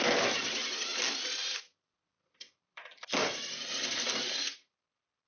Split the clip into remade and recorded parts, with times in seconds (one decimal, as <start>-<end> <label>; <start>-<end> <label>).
0.0-0.9 remade; 0.9-1.6 recorded; 1.6-5.3 remade